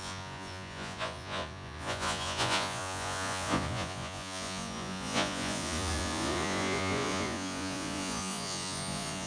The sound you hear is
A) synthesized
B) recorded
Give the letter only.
A